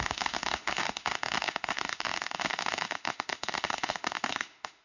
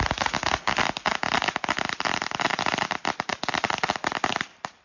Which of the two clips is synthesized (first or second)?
first